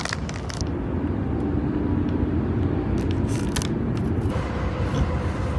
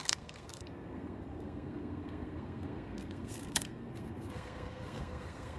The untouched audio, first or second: first